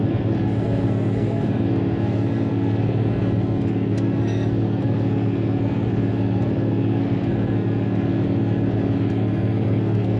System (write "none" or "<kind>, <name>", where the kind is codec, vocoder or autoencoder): codec, SNAC